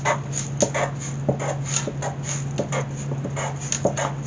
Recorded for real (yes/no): yes